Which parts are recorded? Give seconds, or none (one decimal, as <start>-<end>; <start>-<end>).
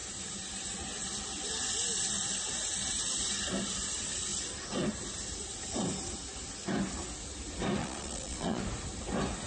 0.0-7.8; 8.6-9.5